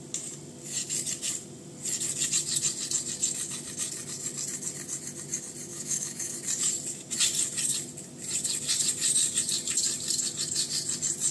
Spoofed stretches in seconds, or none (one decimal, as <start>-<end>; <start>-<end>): 5.7-6.3